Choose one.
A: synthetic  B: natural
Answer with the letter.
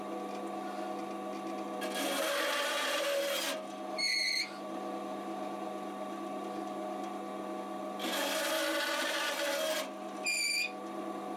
B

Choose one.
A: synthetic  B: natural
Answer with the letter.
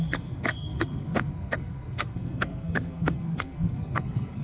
A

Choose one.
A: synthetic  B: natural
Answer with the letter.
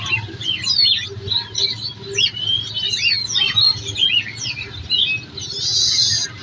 B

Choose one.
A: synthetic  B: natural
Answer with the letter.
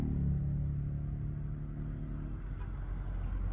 B